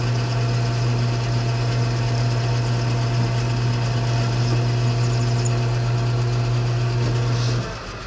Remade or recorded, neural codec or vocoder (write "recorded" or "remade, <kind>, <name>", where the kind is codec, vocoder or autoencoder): recorded